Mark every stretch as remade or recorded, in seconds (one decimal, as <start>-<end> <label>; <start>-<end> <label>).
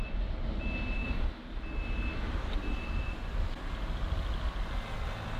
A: 0.0-5.4 recorded